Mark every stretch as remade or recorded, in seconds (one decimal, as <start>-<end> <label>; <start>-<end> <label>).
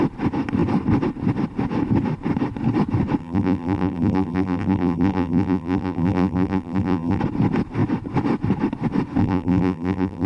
0.0-3.2 recorded; 3.2-7.2 remade; 7.2-9.2 recorded; 9.2-10.3 remade